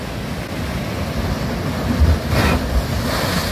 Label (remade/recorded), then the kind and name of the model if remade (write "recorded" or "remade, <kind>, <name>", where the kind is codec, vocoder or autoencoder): recorded